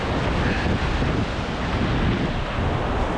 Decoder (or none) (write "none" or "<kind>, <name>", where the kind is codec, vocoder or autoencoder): none